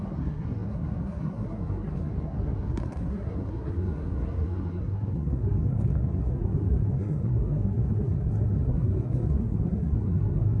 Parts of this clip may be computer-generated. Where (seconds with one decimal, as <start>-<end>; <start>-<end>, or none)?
0.0-10.6